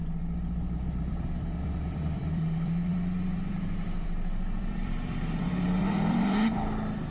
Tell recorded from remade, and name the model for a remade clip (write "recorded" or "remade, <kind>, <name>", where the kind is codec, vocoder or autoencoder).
remade, vocoder, BigVGAN v2